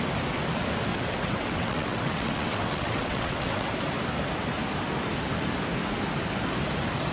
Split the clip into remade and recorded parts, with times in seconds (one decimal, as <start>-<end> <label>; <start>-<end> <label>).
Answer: 0.0-0.9 recorded; 0.9-3.7 remade; 3.7-7.1 recorded